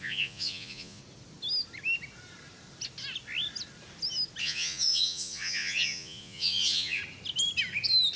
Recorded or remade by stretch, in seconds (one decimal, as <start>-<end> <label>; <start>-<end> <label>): 0.0-1.0 remade; 1.0-4.4 recorded; 4.4-7.0 remade; 7.0-8.2 recorded